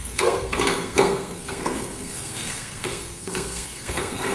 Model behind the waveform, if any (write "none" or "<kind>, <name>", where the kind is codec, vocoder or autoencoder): codec, SNAC